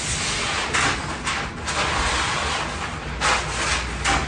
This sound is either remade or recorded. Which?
recorded